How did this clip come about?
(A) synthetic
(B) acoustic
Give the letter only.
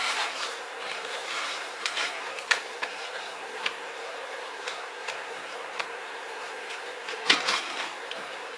A